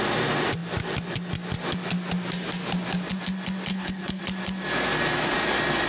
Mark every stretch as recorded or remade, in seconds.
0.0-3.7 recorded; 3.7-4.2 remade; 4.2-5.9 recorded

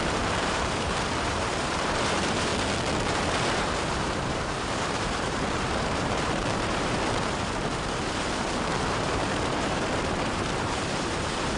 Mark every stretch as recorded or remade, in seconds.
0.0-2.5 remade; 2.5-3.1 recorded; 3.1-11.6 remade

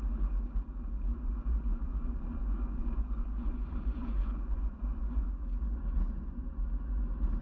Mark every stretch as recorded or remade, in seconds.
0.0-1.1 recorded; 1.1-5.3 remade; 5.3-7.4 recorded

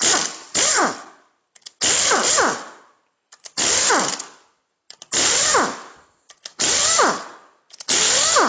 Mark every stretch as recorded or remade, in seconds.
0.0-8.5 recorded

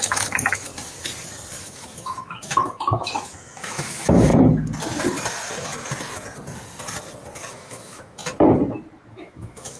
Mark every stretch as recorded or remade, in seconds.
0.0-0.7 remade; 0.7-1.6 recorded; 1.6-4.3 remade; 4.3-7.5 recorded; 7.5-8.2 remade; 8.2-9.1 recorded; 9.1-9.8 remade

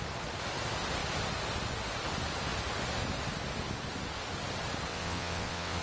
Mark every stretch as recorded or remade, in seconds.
0.0-4.9 recorded; 4.9-5.8 remade

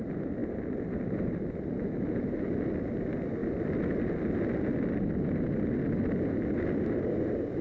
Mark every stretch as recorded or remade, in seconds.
0.0-7.6 recorded